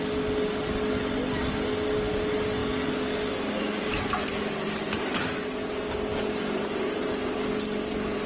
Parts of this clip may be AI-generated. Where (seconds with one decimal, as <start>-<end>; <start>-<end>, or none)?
none